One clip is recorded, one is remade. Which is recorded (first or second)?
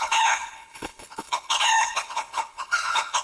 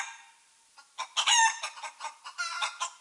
second